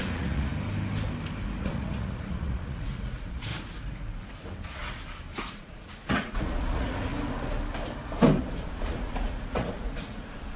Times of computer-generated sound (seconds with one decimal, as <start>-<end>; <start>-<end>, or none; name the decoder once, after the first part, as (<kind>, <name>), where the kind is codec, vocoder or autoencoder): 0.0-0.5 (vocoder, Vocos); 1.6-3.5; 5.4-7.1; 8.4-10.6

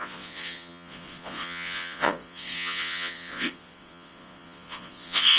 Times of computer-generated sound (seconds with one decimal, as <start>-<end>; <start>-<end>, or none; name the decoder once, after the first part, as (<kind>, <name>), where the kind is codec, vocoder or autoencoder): 0.0-5.4 (vocoder, Vocos)

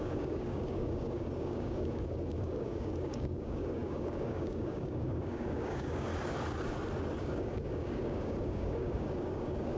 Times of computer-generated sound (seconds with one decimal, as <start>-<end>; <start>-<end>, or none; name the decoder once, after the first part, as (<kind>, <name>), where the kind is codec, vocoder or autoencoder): 0.0-6.1 (codec, DAC); 7.2-9.8

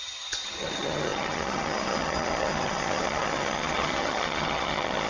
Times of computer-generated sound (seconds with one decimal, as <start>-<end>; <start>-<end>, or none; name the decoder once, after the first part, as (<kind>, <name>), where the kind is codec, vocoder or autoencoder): 0.0-5.1 (vocoder, HiFi-GAN)

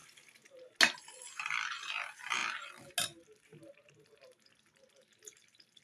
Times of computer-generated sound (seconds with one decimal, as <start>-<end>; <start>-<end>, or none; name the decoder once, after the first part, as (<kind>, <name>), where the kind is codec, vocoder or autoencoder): none